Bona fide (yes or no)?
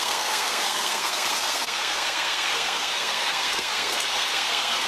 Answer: no